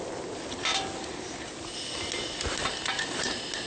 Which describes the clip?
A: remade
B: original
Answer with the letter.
B